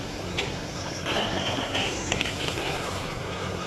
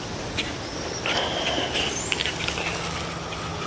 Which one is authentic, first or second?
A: second